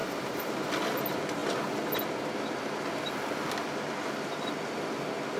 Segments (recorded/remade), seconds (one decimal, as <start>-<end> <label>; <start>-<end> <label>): 0.0-0.6 remade; 0.6-5.4 recorded